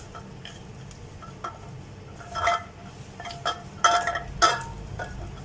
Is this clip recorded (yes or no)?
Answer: yes